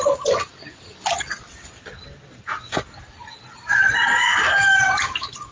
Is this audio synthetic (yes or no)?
no